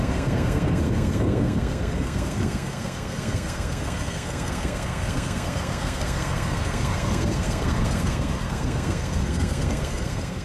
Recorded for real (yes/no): no